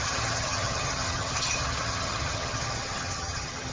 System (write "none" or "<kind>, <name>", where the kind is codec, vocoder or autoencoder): vocoder, HiFi-GAN